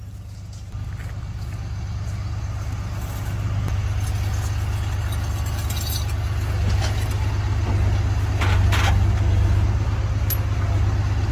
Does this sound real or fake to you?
real